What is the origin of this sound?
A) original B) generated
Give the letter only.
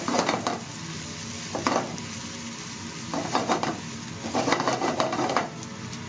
A